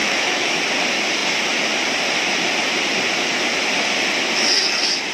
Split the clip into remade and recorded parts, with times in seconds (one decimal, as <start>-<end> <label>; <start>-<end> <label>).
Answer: 0.0-0.6 remade; 0.6-5.1 recorded